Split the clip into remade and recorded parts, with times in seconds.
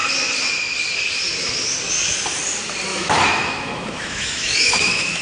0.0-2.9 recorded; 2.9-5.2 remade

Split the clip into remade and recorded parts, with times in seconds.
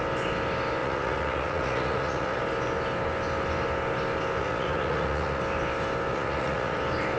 0.0-0.8 recorded; 0.8-2.4 remade; 2.4-4.4 recorded; 4.4-5.4 remade; 5.4-6.1 recorded; 6.1-6.8 remade; 6.8-7.2 recorded